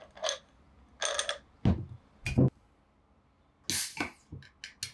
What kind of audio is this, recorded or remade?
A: recorded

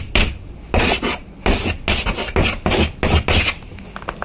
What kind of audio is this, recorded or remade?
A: recorded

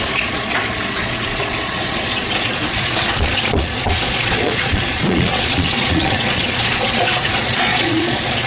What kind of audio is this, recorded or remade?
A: remade